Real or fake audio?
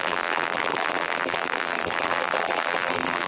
fake